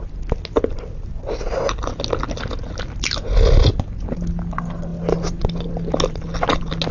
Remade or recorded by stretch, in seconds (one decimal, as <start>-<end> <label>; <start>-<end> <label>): 0.0-6.9 recorded